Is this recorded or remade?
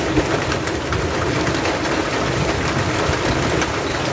recorded